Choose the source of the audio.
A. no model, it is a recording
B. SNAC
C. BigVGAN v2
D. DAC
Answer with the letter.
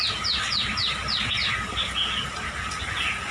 A